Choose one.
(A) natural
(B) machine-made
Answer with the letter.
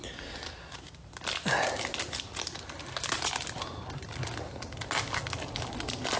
A